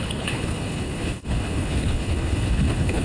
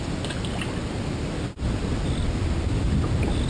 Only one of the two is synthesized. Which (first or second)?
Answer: first